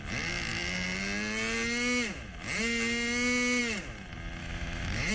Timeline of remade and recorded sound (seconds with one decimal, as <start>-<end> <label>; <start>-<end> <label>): 0.0-4.4 recorded; 4.4-5.1 remade